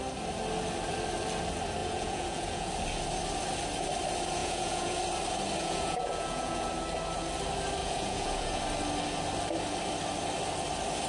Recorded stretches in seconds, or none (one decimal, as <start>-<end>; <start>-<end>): 0.0-1.8; 2.7-4.4; 5.0-5.6; 6.7-7.8; 8.6-11.1